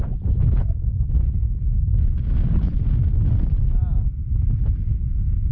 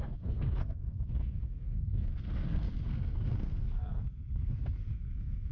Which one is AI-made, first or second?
second